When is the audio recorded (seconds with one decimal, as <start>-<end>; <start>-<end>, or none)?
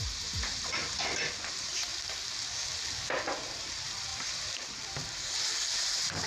0.8-1.5; 1.9-3.6